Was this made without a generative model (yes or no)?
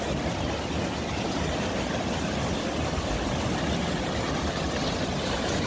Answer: yes